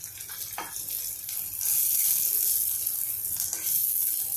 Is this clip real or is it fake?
real